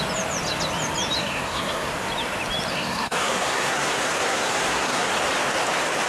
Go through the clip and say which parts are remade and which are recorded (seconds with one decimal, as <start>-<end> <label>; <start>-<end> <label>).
0.0-1.2 recorded; 1.2-1.9 remade; 1.9-2.7 recorded; 2.7-5.1 remade; 5.1-6.1 recorded